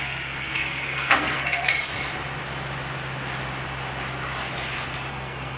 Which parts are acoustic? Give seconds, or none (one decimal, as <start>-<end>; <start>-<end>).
1.7-5.1